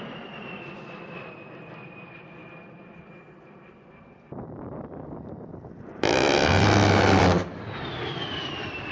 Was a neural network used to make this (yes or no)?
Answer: yes